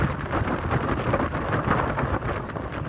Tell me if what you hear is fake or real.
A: fake